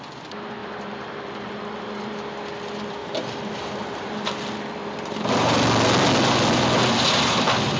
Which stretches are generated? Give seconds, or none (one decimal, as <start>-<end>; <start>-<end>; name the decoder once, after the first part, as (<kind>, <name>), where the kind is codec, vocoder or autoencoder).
0.6-2.2 (vocoder, BigVGAN v2); 3.0-5.3